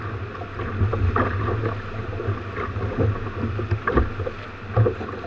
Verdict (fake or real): real